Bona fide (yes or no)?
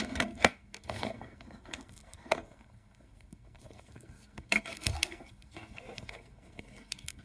no